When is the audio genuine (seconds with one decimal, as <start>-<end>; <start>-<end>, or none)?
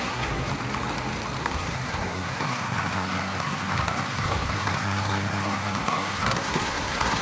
0.5-1.4